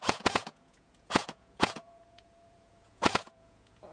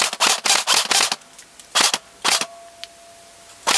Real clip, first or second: second